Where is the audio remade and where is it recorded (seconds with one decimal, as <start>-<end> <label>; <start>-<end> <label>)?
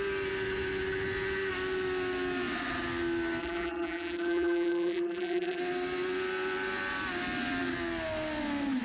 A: 0.0-3.4 recorded; 3.4-5.6 remade; 5.6-8.8 recorded